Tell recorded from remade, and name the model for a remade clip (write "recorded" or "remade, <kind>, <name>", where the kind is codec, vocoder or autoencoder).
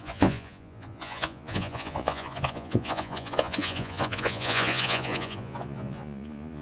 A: remade, vocoder, Vocos